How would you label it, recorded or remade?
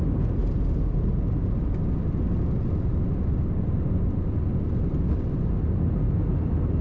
recorded